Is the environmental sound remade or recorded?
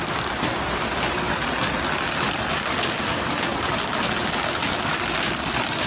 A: recorded